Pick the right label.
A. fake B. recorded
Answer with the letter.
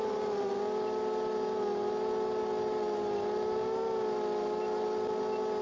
B